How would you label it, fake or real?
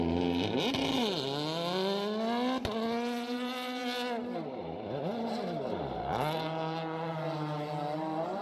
real